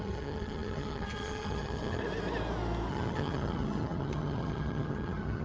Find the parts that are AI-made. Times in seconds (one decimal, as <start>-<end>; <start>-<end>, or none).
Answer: 0.0-2.0; 2.9-5.4